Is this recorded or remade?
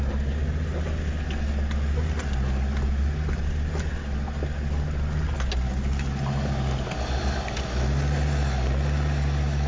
recorded